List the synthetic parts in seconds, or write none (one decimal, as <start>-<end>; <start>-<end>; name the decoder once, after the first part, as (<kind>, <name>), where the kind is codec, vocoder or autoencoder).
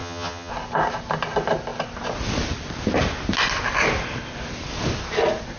0.0-0.5 (vocoder, HiFi-GAN)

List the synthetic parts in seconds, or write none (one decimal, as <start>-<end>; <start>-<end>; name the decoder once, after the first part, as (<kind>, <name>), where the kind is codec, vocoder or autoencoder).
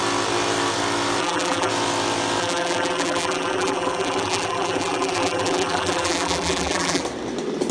1.2-1.7 (vocoder, BigVGAN v2); 2.4-7.0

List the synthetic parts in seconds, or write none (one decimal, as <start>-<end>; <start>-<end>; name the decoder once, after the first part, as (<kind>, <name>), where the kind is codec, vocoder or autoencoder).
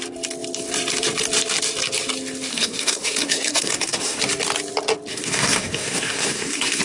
2.5-4.2 (codec, SNAC); 5.1-6.8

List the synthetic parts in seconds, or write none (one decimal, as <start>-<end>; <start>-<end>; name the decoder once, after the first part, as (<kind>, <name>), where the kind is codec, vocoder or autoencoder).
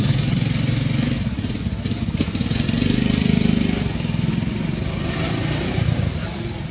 4.3-4.9 (vocoder, BigVGAN v2)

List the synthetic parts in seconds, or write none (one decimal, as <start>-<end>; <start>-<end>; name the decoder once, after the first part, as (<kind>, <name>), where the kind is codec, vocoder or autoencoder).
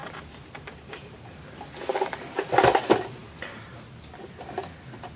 0.0-1.3 (vocoder, BigVGAN v2); 3.2-4.0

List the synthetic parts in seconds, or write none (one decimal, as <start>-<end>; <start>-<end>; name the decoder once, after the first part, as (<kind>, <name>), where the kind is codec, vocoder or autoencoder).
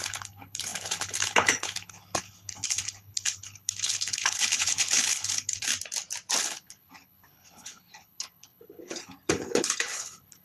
0.0-5.7 (codec, HILCodec); 6.4-10.4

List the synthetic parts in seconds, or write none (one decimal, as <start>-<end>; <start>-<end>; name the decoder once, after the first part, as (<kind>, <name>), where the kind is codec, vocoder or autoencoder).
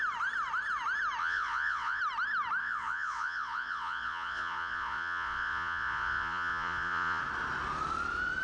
1.2-2.0 (vocoder, Vocos); 2.6-7.2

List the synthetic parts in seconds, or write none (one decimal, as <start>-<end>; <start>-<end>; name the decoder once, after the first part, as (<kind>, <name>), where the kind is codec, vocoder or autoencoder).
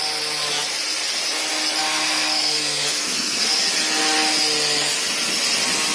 1.8-3.6 (codec, SNAC)